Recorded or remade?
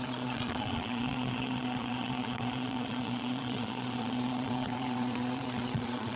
remade